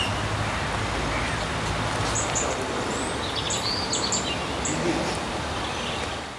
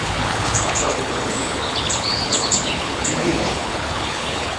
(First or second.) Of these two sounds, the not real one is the second